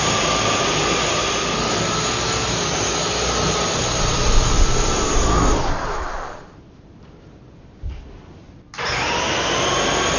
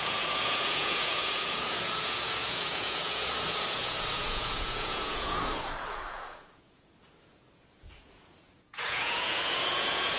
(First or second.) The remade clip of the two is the second